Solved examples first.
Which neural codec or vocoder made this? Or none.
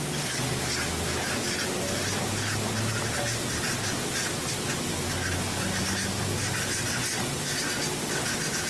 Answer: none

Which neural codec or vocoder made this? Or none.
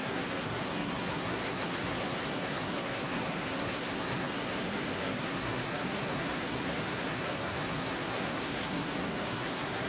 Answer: codec, SNAC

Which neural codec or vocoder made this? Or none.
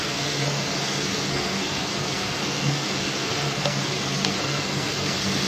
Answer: codec, SNAC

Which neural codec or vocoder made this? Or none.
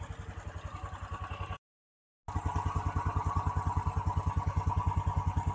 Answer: none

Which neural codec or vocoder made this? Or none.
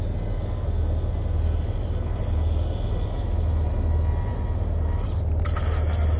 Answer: none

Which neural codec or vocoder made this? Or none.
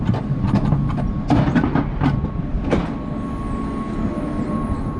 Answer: none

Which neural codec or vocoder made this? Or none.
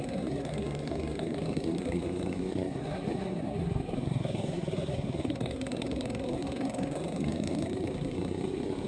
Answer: codec, SNAC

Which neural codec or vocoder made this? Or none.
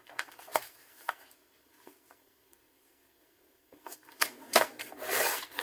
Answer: codec, SNAC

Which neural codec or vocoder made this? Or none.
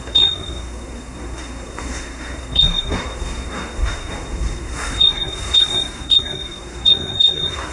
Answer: codec, SNAC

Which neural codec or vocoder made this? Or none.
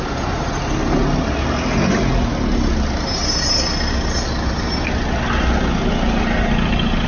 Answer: none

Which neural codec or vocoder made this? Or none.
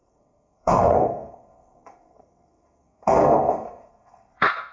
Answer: codec, SNAC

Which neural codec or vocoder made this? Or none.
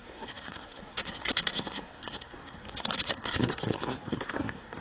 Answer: codec, SNAC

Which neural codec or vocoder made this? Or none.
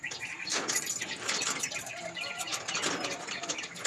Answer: none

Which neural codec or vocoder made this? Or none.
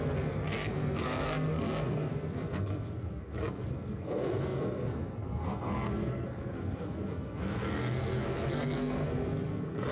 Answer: codec, SNAC